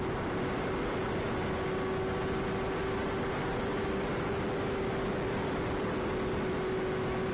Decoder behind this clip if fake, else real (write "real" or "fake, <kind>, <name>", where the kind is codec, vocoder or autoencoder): real